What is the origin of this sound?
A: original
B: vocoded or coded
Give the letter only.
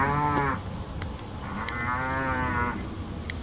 A